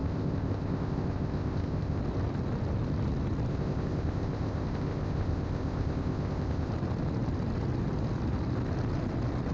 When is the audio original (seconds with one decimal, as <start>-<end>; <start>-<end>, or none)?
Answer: 2.0-3.5; 6.7-9.5

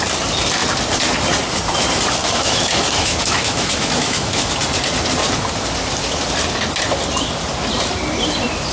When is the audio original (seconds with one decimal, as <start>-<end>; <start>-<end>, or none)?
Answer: 0.0-2.2; 4.5-8.7

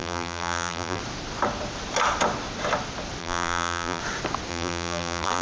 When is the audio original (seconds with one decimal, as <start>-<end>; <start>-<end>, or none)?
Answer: 1.0-3.2; 4.0-4.5

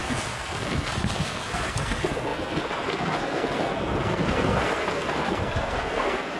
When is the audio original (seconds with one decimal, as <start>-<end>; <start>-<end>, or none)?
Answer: none